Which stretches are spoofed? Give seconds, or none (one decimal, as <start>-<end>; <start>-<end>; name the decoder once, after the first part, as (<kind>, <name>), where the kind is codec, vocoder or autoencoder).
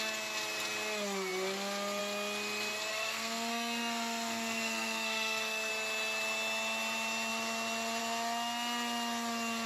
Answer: 2.9-5.7 (codec, SNAC)